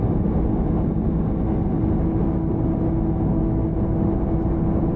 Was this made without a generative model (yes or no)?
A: yes